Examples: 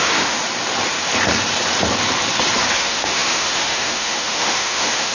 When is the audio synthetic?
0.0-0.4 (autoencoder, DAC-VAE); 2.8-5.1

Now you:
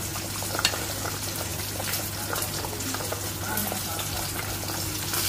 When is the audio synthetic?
1.5-2.0 (vocoder, BigVGAN v2); 3.6-4.5